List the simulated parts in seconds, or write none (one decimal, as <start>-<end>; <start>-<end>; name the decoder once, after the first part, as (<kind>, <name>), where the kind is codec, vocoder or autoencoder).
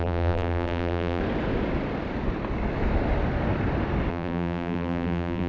0.0-1.2 (vocoder, BigVGAN v2); 4.1-5.5